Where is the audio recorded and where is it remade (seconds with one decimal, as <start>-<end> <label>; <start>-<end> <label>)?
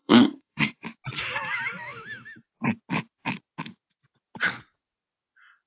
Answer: 0.0-0.7 remade; 0.7-5.7 recorded